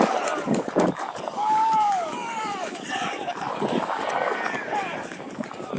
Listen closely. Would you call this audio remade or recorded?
remade